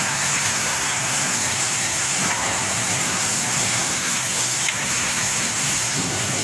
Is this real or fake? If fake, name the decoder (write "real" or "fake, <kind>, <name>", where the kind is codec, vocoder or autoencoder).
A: fake, codec, SNAC